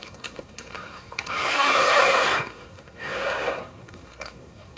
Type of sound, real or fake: fake